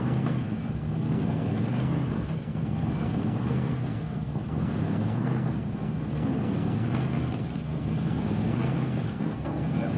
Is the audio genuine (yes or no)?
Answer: no